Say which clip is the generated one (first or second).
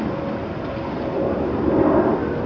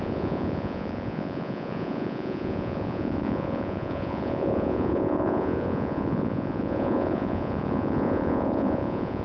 second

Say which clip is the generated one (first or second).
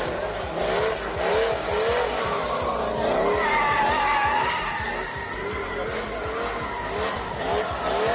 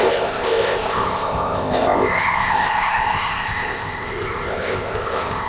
second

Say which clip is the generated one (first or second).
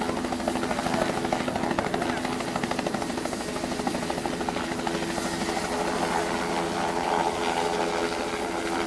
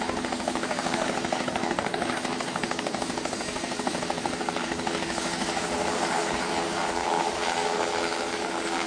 second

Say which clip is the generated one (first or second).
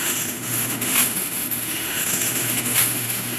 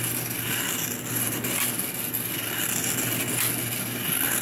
first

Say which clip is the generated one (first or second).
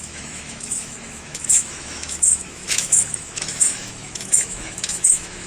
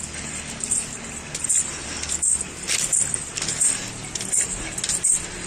first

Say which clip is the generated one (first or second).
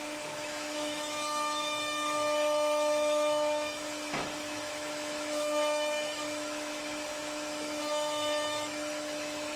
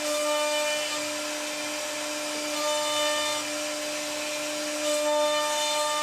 first